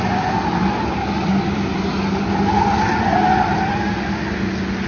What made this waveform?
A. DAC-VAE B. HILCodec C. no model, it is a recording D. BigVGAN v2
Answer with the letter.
C